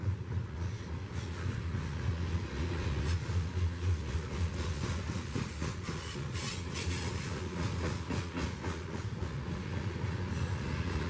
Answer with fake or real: fake